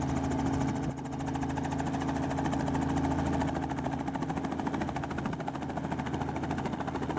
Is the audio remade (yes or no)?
no